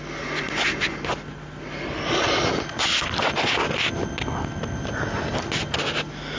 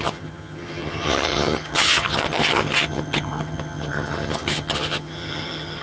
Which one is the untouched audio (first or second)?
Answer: first